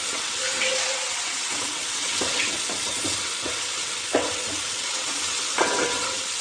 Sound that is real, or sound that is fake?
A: fake